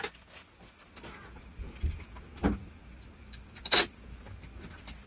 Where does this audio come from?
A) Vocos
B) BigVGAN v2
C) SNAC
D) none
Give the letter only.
D